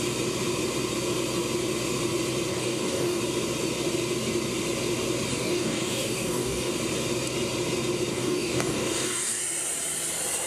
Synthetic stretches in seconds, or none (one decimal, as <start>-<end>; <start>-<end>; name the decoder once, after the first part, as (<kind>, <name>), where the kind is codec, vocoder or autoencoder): 2.5-3.2 (codec, DAC); 5.3-6.7; 8.1-9.4